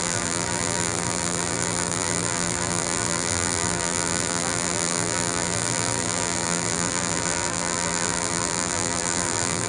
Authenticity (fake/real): fake